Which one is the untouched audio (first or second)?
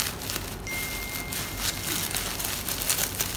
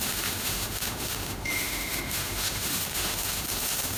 first